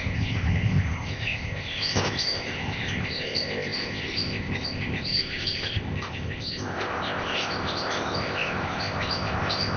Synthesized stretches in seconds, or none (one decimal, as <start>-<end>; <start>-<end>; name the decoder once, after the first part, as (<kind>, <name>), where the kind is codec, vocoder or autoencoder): 0.0-9.8 (codec, ZipCodec)